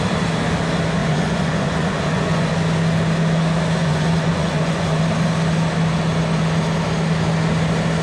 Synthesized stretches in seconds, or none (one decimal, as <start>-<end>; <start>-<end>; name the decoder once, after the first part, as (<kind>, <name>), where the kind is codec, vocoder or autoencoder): 1.0-2.5 (vocoder, Vocos); 3.8-5.0